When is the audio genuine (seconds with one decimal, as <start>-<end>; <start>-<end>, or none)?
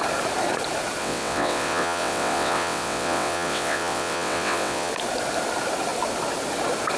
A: 0.0-1.0; 4.9-7.0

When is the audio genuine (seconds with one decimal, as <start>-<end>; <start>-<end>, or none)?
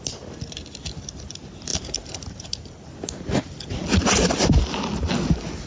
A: 0.0-5.7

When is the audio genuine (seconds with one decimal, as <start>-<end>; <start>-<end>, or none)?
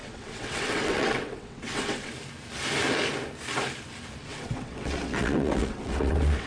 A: 2.1-4.2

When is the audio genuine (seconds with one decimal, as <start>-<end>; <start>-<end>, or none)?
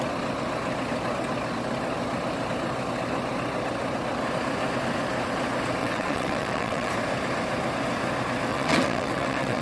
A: 0.0-5.8; 6.9-8.5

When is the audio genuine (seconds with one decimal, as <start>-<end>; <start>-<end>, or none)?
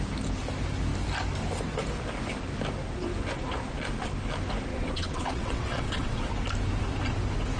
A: 0.0-4.7; 6.3-7.6